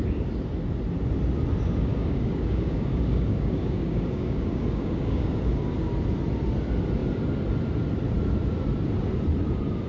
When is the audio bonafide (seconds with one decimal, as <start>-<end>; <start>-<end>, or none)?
0.0-1.9; 5.9-9.9